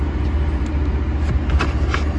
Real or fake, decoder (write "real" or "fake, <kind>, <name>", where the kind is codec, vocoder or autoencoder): real